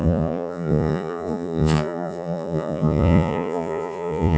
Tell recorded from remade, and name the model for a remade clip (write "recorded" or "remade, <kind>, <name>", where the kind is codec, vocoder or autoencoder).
remade, vocoder, Vocos